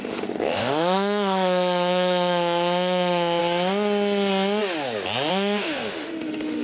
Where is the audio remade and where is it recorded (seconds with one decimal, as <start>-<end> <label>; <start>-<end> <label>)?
0.0-3.4 remade; 3.4-5.3 recorded; 5.3-6.6 remade